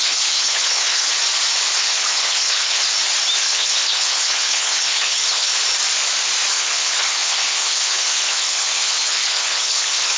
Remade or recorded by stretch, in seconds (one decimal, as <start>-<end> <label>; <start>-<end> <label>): 0.0-1.1 remade; 1.1-1.8 recorded; 1.8-2.8 remade; 2.8-3.4 recorded; 3.4-5.5 remade; 5.5-6.5 recorded; 6.5-10.2 remade